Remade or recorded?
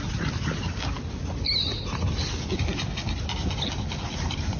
recorded